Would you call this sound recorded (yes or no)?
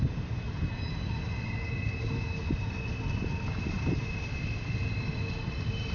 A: yes